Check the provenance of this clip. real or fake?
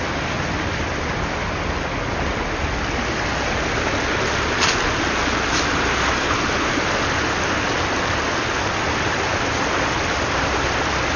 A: real